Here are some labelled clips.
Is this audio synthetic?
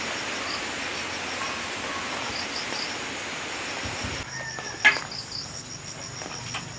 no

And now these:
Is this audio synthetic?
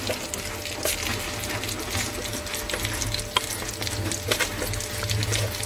no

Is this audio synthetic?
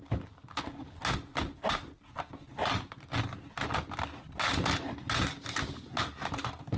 no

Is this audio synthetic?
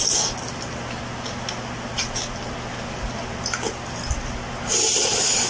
no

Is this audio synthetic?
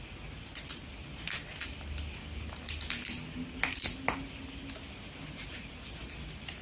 no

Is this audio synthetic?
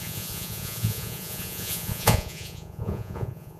yes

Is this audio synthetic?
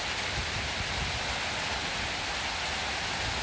no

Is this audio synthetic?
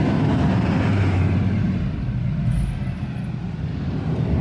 no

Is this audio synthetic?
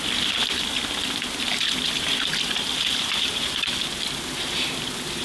no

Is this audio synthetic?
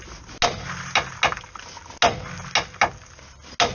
no